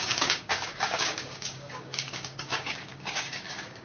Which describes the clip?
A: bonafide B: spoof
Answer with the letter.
B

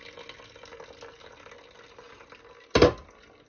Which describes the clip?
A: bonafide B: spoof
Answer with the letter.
A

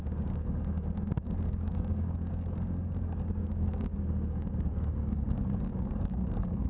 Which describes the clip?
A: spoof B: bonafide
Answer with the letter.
A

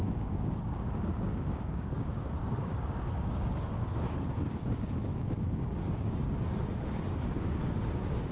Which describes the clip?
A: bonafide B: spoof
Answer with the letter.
B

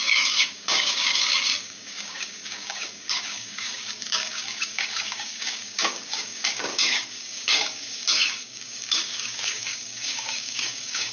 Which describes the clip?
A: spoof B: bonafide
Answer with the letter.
A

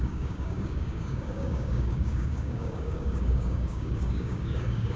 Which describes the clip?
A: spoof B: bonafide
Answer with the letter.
A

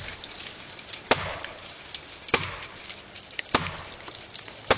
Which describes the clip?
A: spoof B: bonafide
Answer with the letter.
B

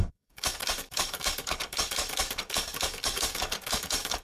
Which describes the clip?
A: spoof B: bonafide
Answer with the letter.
A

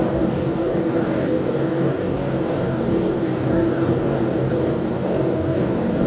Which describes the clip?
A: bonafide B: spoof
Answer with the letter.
B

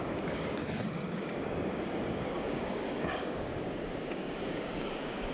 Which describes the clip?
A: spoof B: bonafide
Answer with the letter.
A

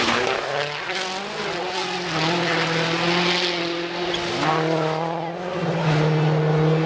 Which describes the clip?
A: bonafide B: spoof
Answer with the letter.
A